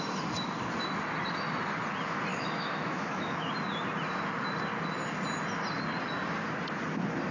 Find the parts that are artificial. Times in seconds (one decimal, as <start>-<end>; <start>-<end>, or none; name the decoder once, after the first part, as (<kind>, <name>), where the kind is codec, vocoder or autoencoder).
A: 2.3-3.5 (autoencoder, DAC-VAE)